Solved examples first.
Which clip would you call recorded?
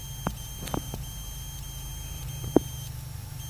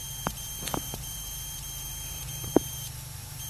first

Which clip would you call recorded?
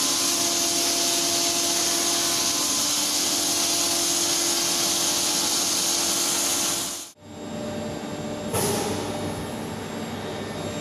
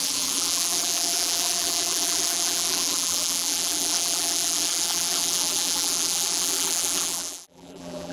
first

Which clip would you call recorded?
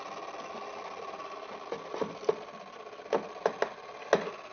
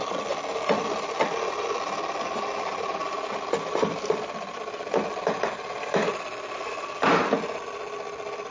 first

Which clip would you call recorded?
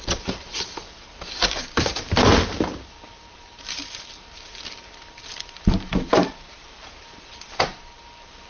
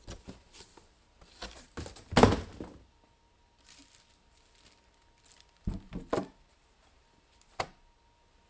second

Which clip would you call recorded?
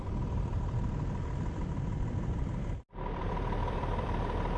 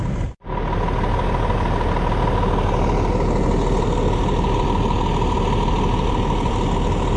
second